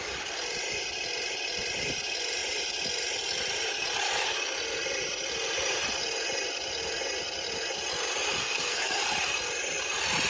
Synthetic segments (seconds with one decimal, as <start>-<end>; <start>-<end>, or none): 8.4-9.0